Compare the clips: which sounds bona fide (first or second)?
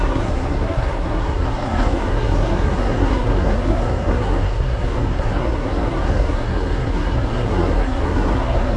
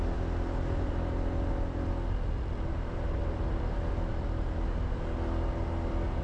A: second